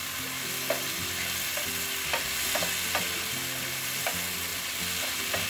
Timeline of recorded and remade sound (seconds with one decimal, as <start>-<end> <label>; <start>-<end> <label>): 0.0-5.5 recorded